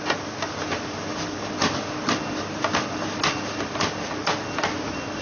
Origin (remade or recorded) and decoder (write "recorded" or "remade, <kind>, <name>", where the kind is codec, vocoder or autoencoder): recorded